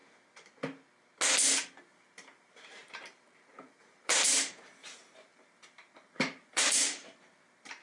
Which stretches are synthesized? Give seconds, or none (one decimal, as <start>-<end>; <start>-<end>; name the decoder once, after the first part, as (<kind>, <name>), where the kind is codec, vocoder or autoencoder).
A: 1.8-7.8 (vocoder, BigVGAN v2)